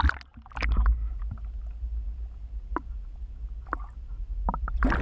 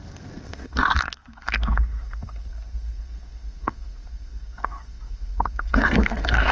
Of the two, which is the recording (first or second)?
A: first